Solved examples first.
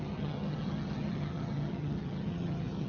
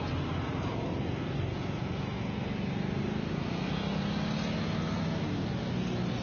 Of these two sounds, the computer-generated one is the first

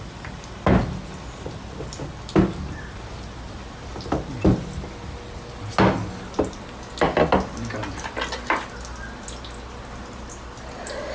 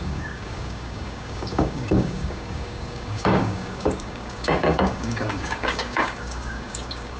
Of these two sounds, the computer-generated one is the second